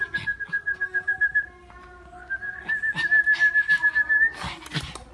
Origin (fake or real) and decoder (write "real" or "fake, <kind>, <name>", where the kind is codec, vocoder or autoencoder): real